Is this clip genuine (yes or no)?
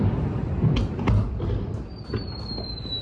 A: yes